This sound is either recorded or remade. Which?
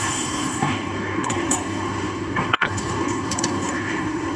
remade